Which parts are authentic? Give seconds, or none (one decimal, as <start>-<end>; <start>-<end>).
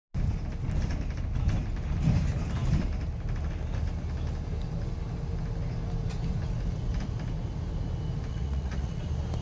0.0-8.3; 9.0-9.4